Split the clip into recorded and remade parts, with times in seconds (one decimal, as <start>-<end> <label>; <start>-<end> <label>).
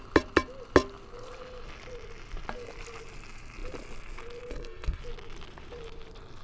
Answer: 0.0-4.5 recorded; 4.5-5.0 remade; 5.0-6.4 recorded